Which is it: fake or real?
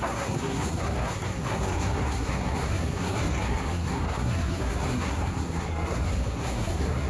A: fake